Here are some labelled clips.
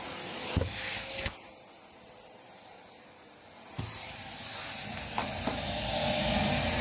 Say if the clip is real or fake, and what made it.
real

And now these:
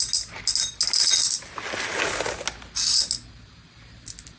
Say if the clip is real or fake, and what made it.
real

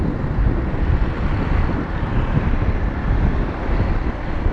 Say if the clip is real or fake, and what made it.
real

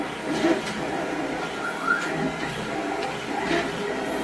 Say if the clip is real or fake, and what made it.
real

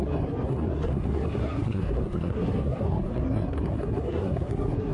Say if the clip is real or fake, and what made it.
fake, codec, SNAC